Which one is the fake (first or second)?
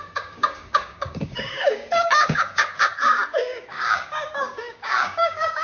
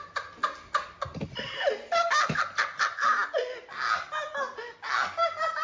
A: first